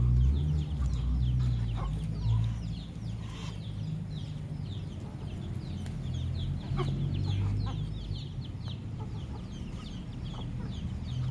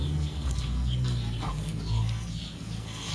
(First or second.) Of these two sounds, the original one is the first